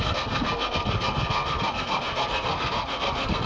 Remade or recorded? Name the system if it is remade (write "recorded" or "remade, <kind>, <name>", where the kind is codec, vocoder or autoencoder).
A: remade, codec, SNAC